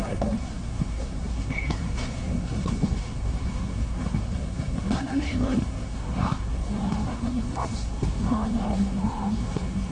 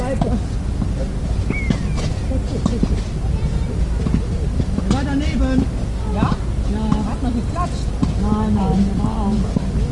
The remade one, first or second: first